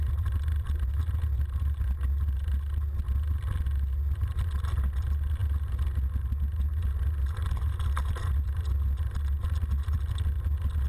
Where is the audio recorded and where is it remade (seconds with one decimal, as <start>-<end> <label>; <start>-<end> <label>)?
0.0-10.9 recorded